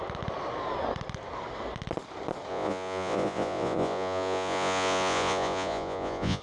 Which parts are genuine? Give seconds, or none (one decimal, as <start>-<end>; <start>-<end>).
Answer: 0.0-2.5